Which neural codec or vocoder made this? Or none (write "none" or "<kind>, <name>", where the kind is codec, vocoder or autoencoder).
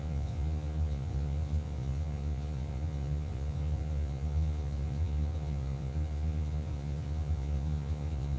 vocoder, Vocos